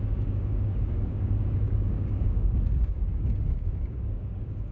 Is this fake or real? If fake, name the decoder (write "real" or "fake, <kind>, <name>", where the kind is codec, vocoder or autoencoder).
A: fake, codec, DAC